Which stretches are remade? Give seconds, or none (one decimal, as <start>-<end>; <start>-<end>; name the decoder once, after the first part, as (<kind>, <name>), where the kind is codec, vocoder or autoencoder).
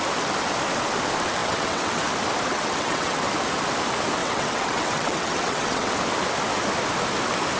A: 1.4-2.0 (vocoder, WaveNeXt); 2.5-3.3; 4.2-5.9